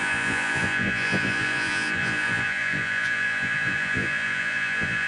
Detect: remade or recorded remade